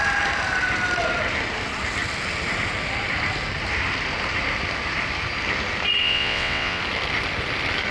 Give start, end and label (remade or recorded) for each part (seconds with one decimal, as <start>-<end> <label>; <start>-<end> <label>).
0.0-6.0 recorded; 6.0-6.8 remade; 6.8-7.9 recorded